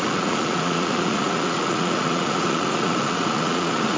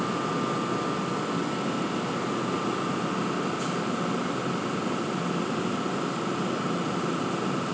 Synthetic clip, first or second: first